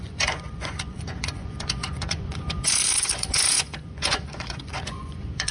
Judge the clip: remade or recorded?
remade